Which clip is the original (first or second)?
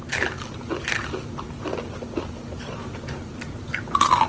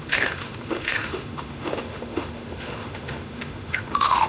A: first